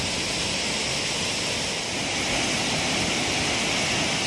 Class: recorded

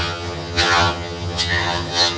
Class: remade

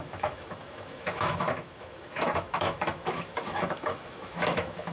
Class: remade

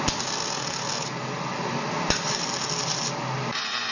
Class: recorded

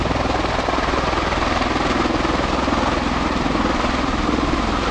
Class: recorded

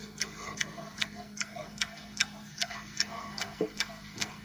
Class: remade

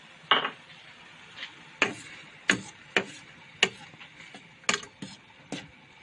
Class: recorded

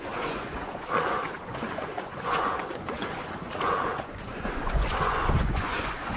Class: remade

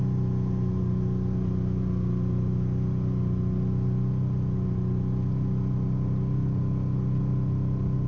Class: recorded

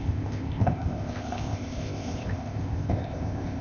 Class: remade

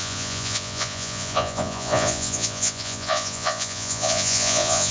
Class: remade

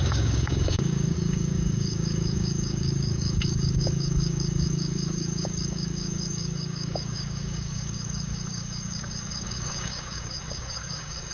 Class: remade